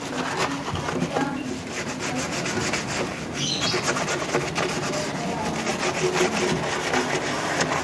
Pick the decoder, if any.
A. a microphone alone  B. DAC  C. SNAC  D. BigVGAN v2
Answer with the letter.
A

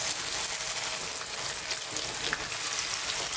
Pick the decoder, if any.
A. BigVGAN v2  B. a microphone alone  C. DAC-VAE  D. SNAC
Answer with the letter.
B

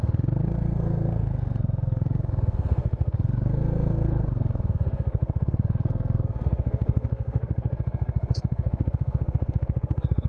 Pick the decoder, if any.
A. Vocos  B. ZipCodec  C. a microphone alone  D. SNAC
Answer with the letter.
D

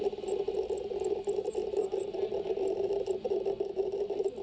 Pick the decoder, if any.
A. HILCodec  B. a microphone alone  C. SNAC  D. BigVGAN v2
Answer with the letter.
B